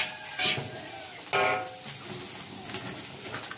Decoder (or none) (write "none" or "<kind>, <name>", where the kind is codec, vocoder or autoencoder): none